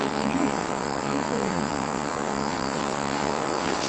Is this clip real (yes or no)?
no